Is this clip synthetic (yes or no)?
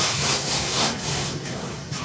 yes